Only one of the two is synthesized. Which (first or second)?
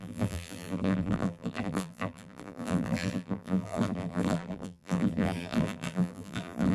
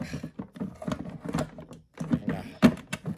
first